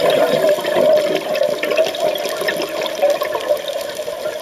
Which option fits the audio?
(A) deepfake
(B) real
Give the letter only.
B